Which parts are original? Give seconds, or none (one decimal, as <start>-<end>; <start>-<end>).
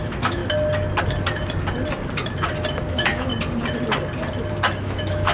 0.4-2.9; 3.3-4.8